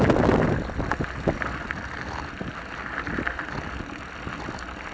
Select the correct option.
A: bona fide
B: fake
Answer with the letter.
A